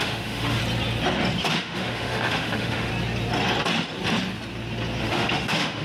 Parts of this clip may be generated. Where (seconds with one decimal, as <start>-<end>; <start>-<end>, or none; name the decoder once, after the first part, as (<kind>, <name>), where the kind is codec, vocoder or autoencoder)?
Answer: 0.0-0.6 (autoencoder, DAC-VAE); 1.4-2.9; 5.0-5.8

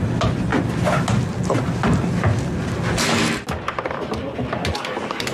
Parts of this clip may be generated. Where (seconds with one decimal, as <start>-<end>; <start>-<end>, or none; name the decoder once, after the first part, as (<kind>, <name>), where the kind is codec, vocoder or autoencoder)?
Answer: none

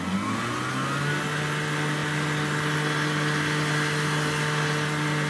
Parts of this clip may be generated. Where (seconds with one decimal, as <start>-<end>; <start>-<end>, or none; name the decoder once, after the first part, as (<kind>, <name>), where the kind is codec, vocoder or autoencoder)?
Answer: none

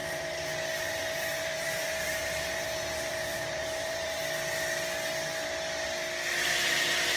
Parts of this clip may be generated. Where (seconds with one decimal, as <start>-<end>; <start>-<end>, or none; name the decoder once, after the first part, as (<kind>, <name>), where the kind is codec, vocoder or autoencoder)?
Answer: 0.0-4.2 (vocoder, BigVGAN v2)

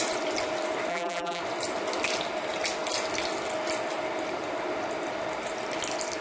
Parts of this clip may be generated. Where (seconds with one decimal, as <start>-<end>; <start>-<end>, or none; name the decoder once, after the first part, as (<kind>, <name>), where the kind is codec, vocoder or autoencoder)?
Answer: 0.9-1.4 (vocoder, BigVGAN v2)

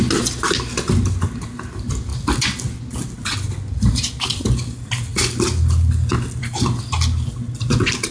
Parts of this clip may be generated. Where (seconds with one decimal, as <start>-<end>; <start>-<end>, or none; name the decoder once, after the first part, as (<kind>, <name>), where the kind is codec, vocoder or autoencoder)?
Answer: none

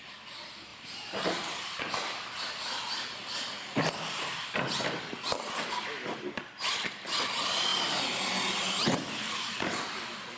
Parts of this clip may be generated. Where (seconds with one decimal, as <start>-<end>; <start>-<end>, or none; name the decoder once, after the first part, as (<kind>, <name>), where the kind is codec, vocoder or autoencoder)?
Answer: 0.7-1.8 (vocoder, BigVGAN v2)